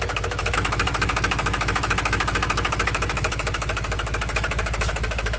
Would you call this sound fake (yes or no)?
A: yes